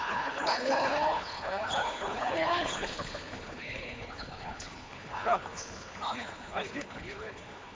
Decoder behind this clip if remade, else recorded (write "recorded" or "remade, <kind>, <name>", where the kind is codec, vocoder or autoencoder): remade, codec, HILCodec